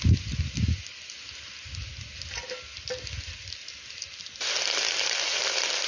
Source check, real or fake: real